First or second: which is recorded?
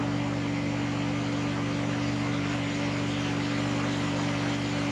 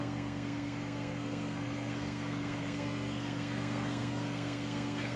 first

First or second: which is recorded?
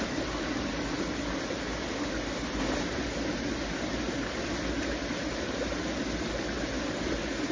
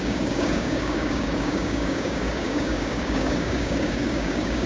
first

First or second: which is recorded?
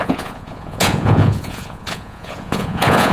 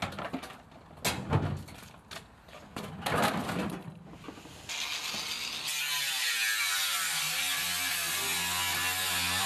second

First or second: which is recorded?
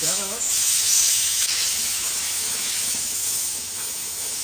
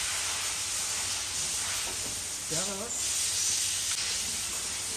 second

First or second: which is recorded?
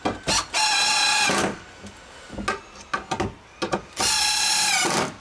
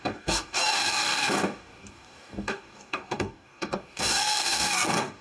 first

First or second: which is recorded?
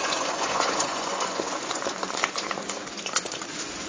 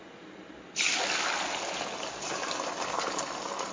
second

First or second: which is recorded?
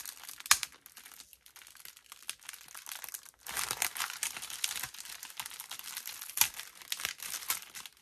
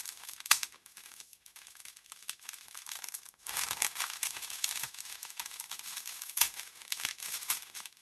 first